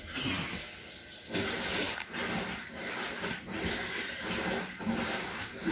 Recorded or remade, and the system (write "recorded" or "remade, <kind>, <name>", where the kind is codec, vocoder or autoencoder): recorded